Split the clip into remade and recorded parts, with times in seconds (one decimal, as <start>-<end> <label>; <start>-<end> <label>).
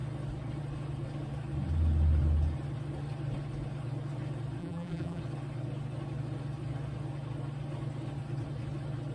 0.0-4.6 recorded; 4.6-5.2 remade; 5.2-9.1 recorded